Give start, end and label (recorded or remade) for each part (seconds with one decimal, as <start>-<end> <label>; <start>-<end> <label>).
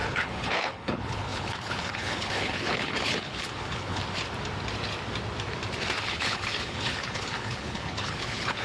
0.0-4.0 remade; 4.0-6.0 recorded; 6.0-8.6 remade